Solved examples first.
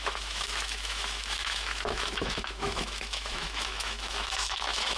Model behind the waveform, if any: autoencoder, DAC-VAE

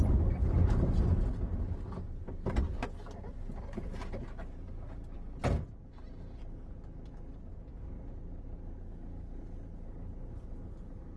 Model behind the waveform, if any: none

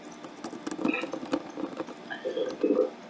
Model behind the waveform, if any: none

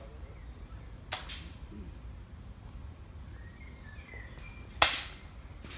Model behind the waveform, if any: none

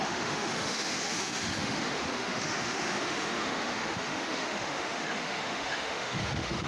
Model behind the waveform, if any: autoencoder, DAC-VAE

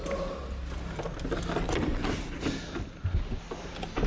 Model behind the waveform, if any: none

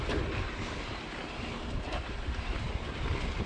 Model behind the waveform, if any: none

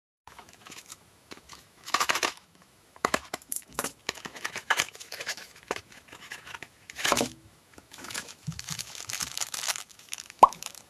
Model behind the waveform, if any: autoencoder, DAC-VAE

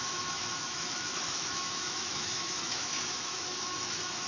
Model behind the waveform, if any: autoencoder, DAC-VAE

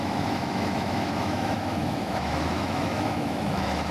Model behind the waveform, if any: autoencoder, DAC-VAE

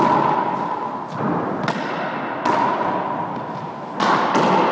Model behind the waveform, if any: none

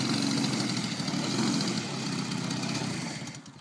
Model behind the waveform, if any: none